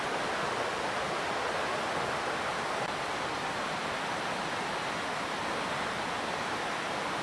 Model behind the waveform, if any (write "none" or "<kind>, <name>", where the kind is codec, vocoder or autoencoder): none